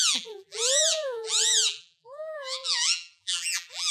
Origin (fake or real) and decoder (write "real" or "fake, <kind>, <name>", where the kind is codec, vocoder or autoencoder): fake, vocoder, BigVGAN v2